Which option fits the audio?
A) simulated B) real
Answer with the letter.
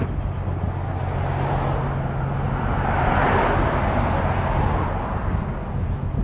B